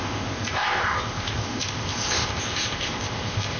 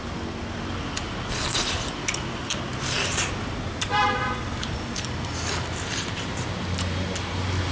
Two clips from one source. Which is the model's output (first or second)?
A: first